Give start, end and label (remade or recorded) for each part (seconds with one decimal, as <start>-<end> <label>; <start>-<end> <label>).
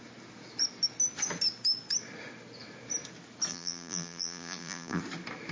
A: 0.0-3.5 recorded; 3.5-5.0 remade; 5.0-5.5 recorded